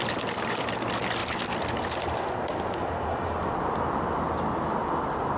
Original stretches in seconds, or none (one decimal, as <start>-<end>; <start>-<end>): 0.0-5.4